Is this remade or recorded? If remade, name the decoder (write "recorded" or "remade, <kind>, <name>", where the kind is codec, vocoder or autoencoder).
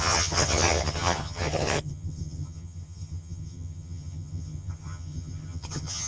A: remade, vocoder, HiFi-GAN